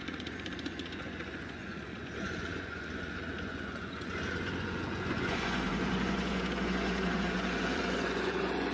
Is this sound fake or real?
fake